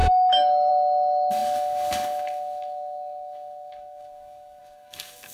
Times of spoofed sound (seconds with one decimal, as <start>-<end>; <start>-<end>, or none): 0.0-5.3